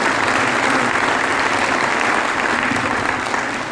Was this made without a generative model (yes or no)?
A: yes